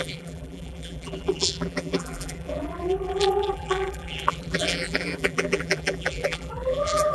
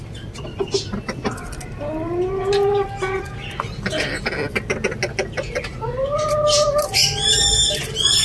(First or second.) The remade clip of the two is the first